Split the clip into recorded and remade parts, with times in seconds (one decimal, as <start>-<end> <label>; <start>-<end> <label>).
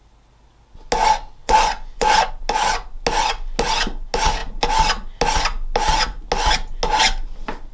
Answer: 0.0-1.4 recorded; 1.4-2.3 remade; 2.3-7.7 recorded